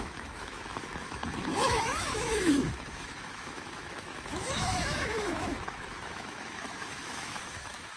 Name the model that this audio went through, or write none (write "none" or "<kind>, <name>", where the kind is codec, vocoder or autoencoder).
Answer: autoencoder, DAC-VAE